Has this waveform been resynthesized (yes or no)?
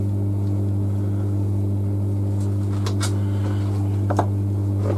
no